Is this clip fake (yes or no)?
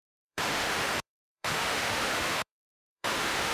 yes